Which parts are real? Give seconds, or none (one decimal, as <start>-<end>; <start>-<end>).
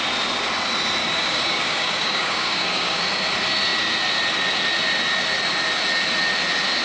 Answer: 0.0-1.0; 3.0-6.8